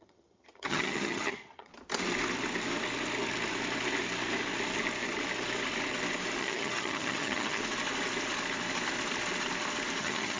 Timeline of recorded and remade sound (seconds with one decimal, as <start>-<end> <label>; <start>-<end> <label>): 0.0-1.7 remade; 1.7-6.4 recorded; 6.4-7.6 remade; 7.6-10.0 recorded; 10.0-10.4 remade